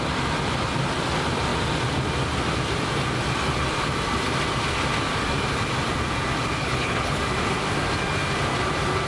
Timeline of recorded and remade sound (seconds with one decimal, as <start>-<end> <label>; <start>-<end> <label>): 0.0-6.6 recorded; 6.6-7.2 remade; 7.2-9.1 recorded